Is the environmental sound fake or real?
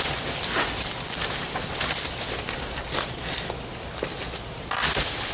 real